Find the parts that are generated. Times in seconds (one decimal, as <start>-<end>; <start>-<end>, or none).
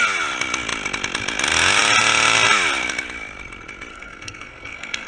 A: 3.9-5.1